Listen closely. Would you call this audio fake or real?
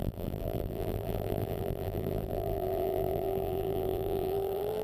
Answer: fake